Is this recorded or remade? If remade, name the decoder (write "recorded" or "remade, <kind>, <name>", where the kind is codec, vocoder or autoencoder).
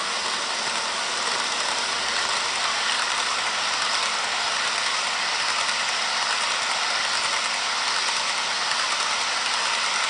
recorded